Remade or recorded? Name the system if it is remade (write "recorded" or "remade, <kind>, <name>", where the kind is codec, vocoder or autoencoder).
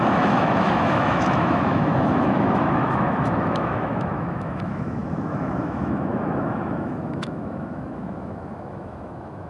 remade, autoencoder, DAC-VAE